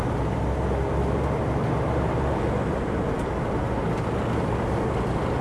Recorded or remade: recorded